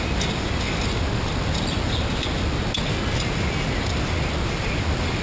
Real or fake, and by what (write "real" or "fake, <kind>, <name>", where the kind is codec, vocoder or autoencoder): real